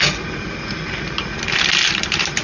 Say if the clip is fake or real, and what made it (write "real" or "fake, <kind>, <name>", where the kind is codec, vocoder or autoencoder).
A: real